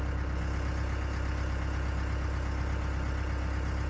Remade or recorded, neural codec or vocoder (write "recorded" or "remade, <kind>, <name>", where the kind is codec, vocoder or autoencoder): recorded